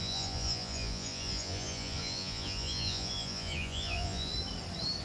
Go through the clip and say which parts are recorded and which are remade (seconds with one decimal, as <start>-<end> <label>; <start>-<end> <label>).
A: 0.0-4.3 remade; 4.3-5.0 recorded